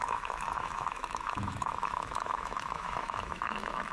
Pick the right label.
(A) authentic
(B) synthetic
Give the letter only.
B